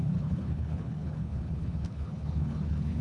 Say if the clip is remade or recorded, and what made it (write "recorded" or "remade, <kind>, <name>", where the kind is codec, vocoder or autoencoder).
remade, codec, HILCodec